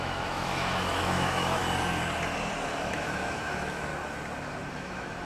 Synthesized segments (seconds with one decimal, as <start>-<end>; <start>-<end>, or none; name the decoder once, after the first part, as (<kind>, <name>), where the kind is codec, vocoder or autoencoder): 0.0-1.6 (autoencoder, DAC-VAE); 2.9-3.9; 4.7-5.3